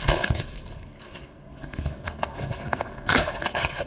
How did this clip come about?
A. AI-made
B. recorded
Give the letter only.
A